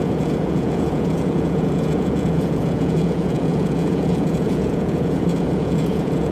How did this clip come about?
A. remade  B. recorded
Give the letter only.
A